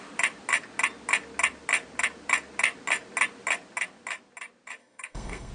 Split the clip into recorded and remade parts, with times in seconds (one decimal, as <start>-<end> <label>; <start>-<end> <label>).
0.0-4.8 recorded; 4.8-5.5 remade